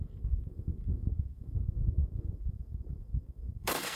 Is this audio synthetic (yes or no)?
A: yes